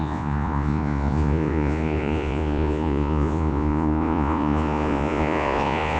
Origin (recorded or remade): remade